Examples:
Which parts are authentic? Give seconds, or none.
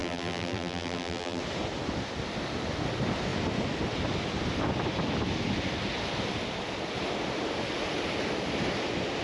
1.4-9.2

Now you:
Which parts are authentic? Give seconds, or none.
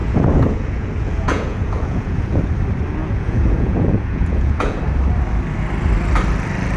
2.4-3.0; 4.8-6.8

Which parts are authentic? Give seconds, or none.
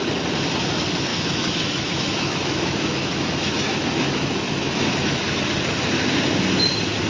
0.0-1.1; 5.4-7.1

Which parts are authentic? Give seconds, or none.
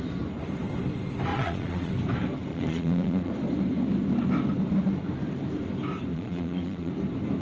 0.0-1.3; 1.9-2.5; 3.3-6.1; 6.9-7.4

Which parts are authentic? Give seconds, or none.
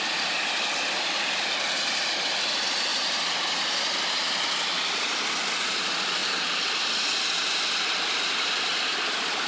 0.0-9.5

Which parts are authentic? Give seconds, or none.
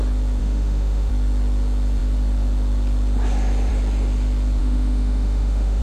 0.0-0.4; 1.1-4.6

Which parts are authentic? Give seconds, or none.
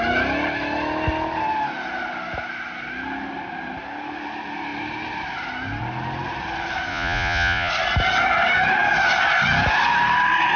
0.0-6.9; 7.7-10.6